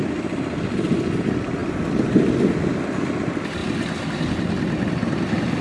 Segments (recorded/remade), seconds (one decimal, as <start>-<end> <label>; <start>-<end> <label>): 0.0-3.6 recorded; 3.6-4.2 remade; 4.2-5.6 recorded